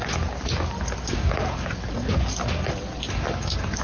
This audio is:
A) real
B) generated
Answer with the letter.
A